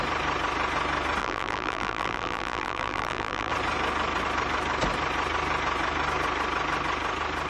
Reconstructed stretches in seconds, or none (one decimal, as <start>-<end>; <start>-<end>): 1.2-3.5